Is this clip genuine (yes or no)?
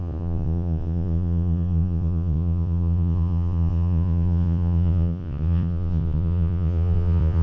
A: no